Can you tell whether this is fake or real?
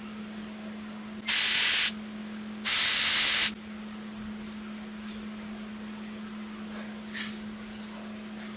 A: real